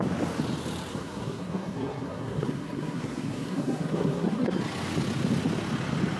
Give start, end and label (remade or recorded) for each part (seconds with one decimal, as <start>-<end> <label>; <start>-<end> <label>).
0.0-0.9 recorded; 0.9-4.6 remade; 4.6-6.2 recorded

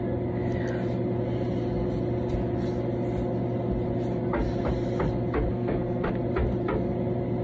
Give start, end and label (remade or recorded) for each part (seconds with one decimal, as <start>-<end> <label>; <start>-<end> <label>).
0.0-5.5 recorded; 5.5-6.1 remade; 6.1-7.4 recorded